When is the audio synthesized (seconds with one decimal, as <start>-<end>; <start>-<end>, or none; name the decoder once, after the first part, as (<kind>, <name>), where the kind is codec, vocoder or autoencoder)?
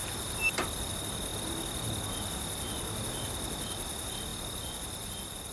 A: 0.0-0.9 (vocoder, BigVGAN v2); 1.3-2.0